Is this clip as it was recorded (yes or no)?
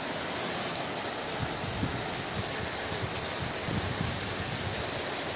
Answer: yes